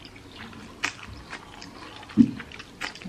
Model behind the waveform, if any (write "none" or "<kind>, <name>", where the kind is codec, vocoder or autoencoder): none